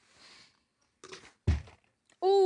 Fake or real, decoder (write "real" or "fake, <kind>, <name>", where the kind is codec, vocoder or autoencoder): real